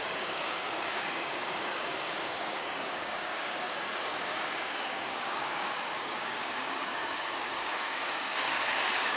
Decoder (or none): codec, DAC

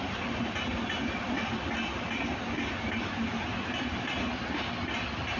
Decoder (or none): none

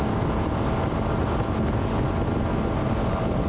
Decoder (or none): none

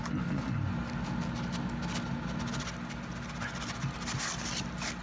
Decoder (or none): none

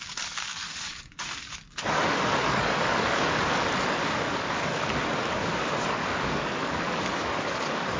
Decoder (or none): codec, DAC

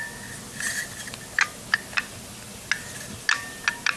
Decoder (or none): none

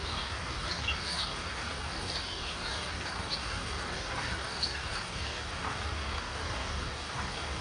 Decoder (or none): codec, DAC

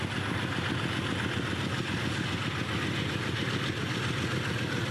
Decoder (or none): none